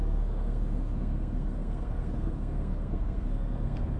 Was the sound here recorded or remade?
remade